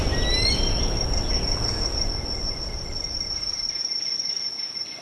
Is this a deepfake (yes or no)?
no